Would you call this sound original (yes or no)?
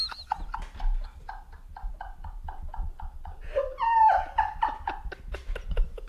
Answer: yes